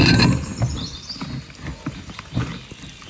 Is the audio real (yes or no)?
yes